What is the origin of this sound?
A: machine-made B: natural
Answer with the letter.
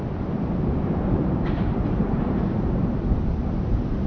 A